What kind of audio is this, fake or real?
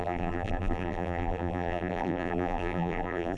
fake